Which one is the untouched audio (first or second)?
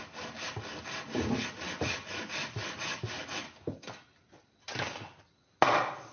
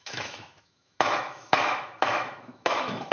first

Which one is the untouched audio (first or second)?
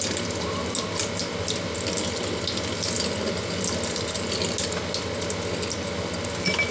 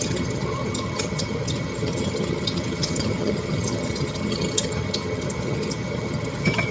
first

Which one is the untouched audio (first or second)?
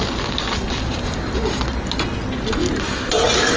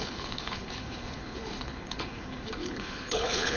first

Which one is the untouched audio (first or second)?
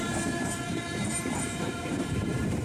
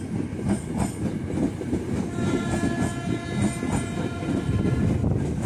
second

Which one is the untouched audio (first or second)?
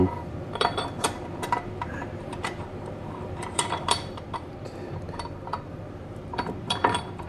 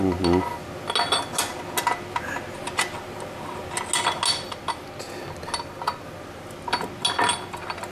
second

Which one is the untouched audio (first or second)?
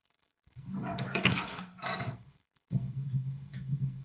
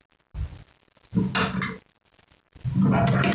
second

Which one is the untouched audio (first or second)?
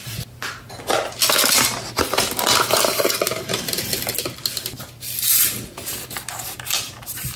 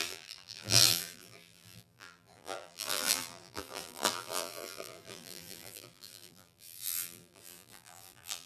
first